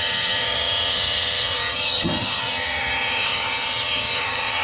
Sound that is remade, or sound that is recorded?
remade